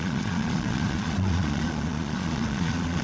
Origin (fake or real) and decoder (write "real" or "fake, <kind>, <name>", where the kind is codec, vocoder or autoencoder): fake, vocoder, Vocos